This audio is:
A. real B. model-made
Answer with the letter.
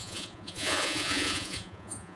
B